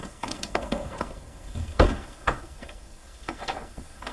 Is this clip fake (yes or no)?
yes